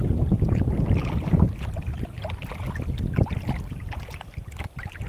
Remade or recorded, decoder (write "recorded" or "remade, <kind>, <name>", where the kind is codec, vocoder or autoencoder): recorded